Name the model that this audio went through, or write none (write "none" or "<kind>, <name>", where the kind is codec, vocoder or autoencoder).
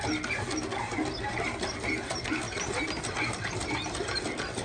none